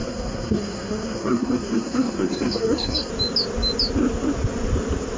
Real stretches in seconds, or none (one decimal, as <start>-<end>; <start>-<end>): 3.1-5.2